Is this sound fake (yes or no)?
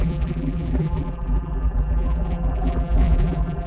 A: yes